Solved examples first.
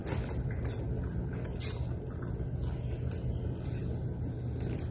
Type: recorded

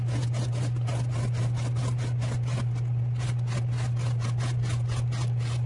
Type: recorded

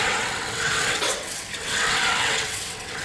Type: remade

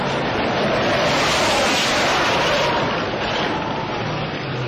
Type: recorded